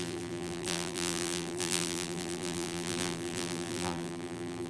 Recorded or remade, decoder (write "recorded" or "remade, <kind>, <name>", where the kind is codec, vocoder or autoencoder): remade, vocoder, BigVGAN v2